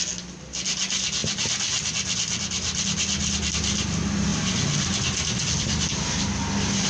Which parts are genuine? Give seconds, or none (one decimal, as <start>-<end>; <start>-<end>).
0.0-6.9